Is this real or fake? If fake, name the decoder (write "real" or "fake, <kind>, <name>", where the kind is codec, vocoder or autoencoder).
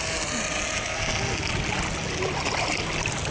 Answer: real